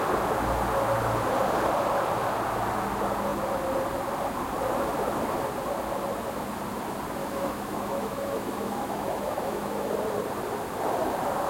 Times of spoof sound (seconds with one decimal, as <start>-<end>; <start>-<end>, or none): 7.2-9.9